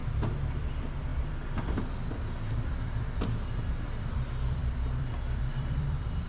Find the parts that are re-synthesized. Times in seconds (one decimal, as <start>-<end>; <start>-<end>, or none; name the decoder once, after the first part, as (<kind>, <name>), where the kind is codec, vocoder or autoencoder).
0.6-6.3 (vocoder, BigVGAN v2)